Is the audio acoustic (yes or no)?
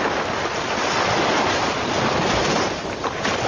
yes